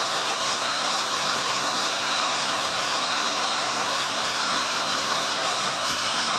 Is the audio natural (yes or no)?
no